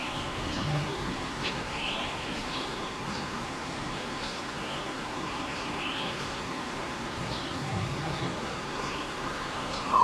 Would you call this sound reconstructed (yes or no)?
yes